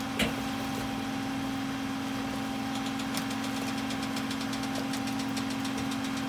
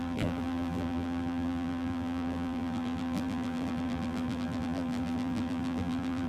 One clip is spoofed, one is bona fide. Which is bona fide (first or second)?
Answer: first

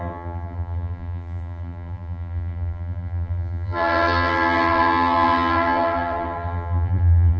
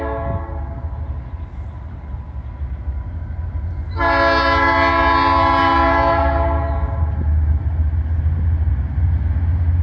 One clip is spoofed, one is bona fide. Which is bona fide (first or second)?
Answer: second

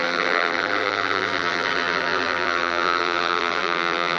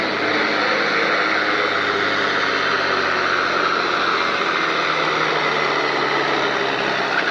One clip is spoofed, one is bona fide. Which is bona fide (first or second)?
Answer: second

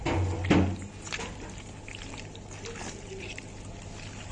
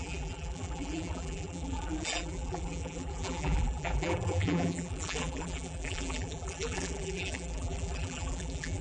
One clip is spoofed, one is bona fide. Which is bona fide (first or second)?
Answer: first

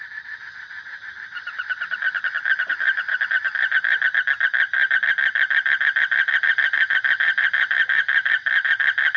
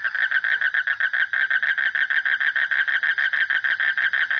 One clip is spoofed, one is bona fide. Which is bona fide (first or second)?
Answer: second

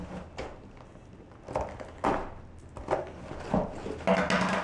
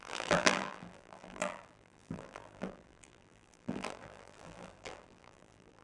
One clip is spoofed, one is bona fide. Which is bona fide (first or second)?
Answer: first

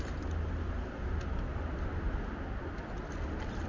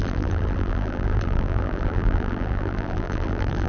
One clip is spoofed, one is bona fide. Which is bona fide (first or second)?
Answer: first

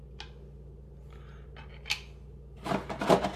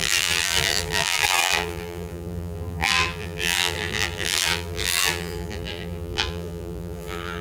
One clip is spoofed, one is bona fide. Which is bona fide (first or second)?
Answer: first